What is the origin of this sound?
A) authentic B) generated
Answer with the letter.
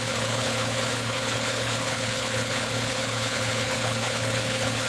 B